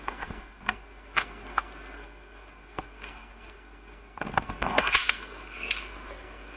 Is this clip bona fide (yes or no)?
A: no